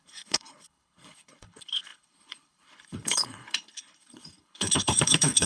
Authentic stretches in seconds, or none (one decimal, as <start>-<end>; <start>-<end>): none